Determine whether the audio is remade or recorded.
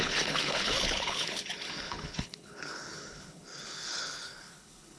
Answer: remade